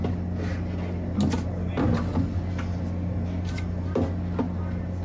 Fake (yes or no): no